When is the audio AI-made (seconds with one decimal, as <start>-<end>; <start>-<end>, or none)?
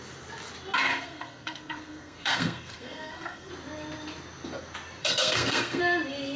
0.9-3.5; 5.0-5.8